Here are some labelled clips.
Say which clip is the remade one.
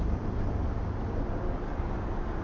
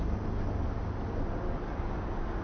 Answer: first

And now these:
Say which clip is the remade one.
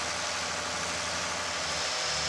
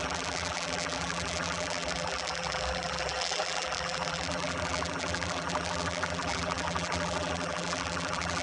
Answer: second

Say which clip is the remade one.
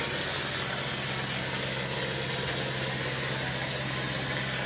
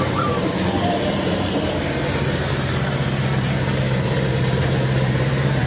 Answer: second